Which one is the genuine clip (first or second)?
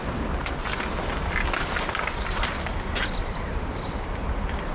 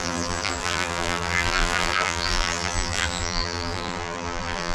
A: first